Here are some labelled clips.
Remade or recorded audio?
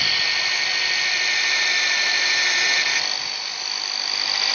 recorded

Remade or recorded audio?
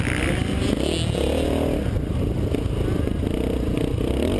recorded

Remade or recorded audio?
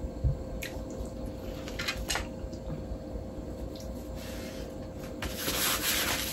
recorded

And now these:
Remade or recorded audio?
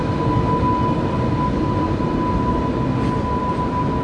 recorded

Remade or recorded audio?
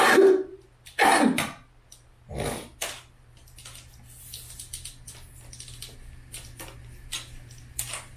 recorded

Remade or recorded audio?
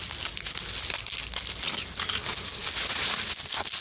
recorded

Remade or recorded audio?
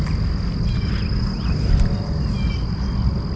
recorded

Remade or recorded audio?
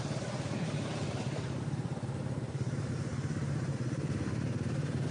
remade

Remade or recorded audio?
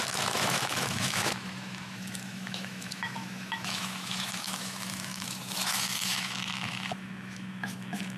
remade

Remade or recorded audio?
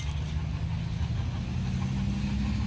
recorded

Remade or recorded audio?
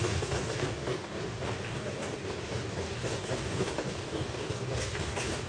remade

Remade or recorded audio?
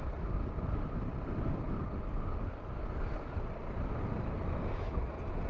recorded